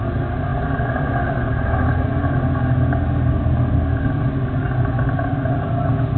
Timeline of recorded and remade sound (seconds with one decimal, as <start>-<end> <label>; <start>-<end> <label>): 0.0-6.2 recorded